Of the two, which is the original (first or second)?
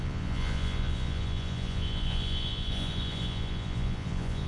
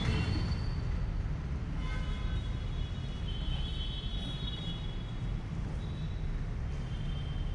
second